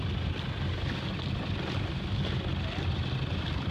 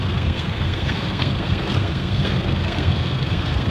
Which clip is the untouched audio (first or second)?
first